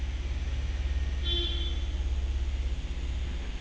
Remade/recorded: recorded